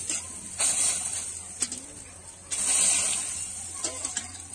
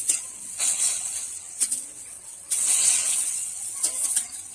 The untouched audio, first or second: first